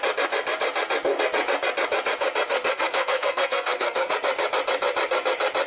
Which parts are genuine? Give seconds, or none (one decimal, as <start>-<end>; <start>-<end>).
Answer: 0.0-2.7; 4.1-5.7